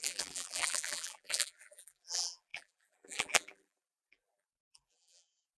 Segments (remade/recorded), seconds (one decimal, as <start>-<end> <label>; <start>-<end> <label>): 0.0-5.6 remade